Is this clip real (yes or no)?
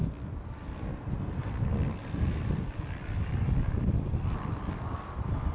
no